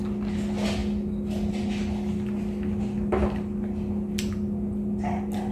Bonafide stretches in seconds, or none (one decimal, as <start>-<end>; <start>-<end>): 0.0-5.5